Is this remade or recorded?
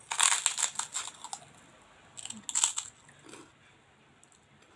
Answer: recorded